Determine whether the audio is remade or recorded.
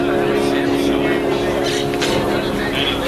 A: recorded